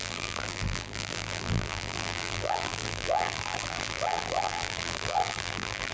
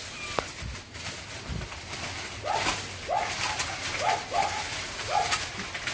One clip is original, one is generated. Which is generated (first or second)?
first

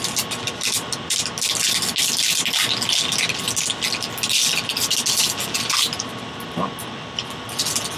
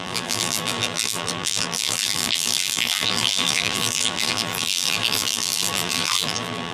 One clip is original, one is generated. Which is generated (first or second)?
second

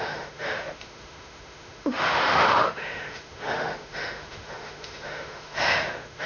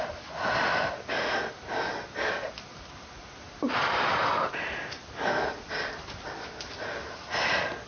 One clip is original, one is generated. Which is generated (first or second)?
first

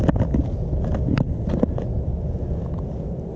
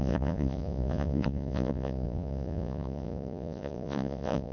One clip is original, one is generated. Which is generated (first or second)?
second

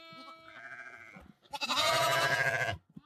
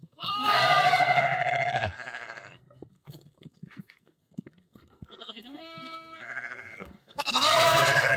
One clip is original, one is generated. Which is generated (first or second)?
second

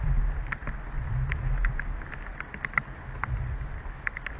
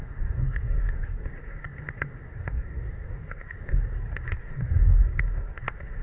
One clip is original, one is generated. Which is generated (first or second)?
second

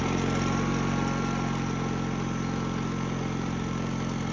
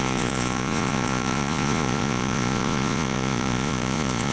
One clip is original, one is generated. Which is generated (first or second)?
second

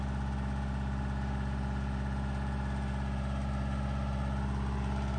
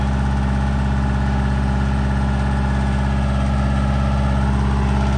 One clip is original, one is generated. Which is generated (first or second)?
first